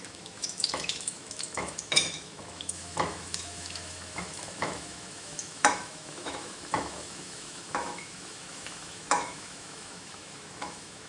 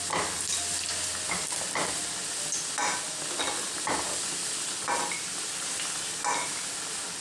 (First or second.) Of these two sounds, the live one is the second